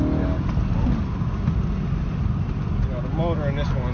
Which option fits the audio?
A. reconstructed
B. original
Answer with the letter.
B